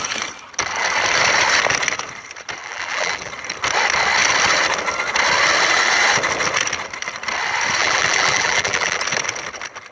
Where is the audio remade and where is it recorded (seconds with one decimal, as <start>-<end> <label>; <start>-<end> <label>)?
0.0-2.6 recorded; 2.6-3.3 remade; 3.3-7.8 recorded; 7.8-9.0 remade; 9.0-9.9 recorded